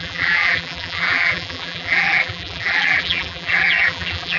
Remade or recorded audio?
remade